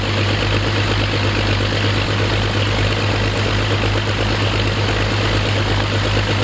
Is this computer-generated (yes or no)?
no